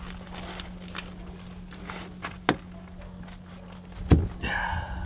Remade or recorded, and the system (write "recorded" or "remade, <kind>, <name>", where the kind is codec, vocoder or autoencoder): recorded